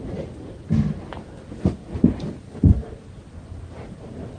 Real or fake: real